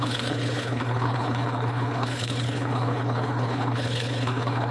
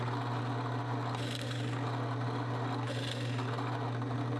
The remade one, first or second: first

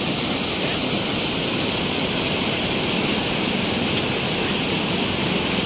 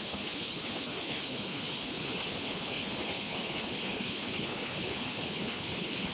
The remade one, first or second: second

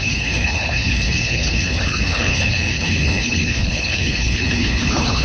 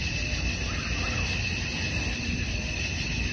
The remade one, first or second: first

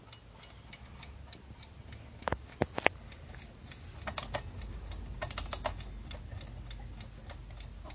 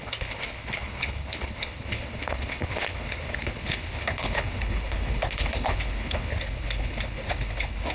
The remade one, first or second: second